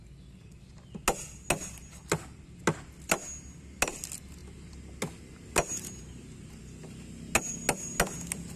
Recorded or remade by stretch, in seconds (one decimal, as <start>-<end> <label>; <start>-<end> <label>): 0.0-8.6 recorded